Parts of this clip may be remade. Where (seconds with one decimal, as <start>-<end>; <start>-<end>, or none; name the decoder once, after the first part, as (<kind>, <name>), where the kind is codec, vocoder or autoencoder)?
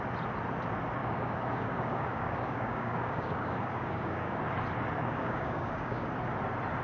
1.0-4.4 (codec, DAC); 5.0-6.1